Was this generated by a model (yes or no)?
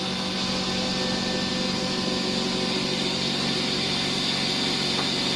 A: no